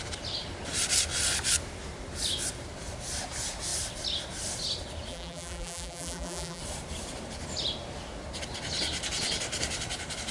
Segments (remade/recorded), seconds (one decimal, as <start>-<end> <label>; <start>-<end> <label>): 0.0-5.1 recorded; 5.1-6.6 remade; 6.6-10.3 recorded